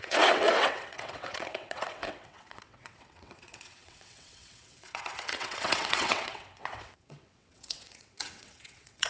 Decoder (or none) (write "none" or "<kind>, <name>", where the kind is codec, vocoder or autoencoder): vocoder, WaveNeXt